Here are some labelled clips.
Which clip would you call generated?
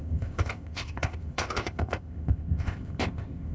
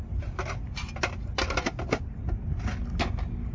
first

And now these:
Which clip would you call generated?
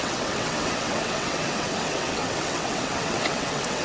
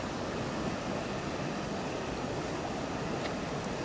first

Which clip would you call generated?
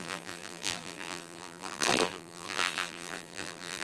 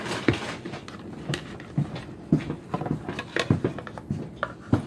first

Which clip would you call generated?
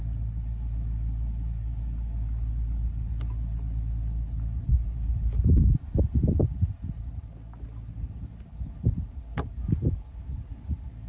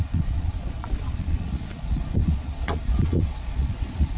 second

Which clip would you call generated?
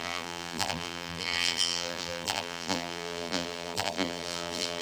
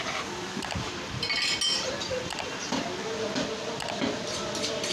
first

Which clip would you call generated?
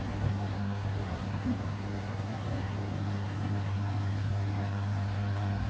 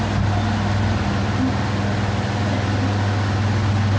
first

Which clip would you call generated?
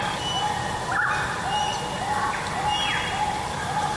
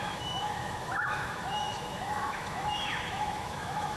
second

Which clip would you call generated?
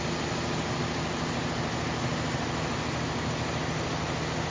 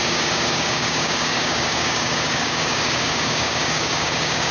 second